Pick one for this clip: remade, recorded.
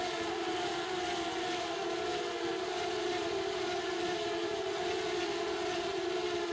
recorded